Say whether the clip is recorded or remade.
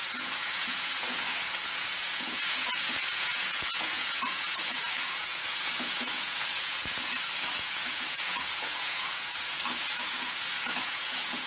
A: remade